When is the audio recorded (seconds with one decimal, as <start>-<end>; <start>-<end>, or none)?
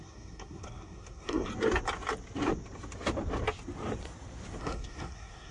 1.5-4.6